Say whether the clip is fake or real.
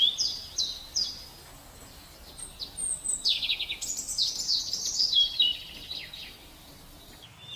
real